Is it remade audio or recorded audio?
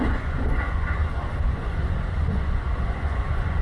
remade